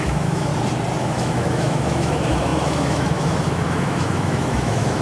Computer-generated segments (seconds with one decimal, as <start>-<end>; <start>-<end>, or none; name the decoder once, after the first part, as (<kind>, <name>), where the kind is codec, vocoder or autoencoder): 0.0-0.5 (autoencoder, DAC-VAE); 1.0-5.0